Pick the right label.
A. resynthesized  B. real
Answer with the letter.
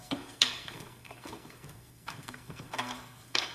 A